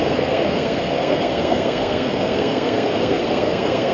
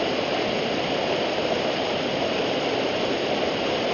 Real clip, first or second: second